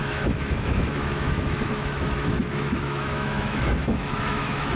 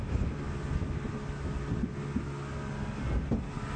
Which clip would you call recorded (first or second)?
second